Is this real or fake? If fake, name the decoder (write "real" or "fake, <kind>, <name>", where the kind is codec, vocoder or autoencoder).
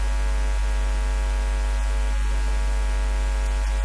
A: real